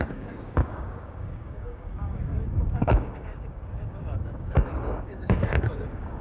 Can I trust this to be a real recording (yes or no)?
no